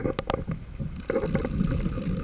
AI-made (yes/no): no